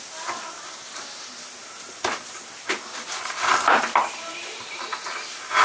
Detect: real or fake real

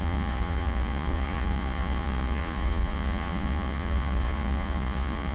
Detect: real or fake fake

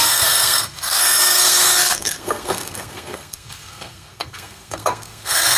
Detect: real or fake fake